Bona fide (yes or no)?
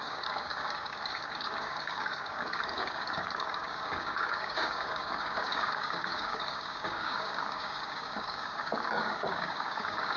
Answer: no